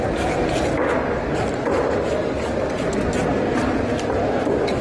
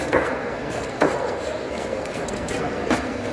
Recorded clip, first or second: first